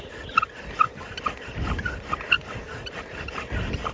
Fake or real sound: real